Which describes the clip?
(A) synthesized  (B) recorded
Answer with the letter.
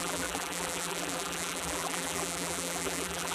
A